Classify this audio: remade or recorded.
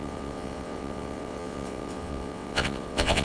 remade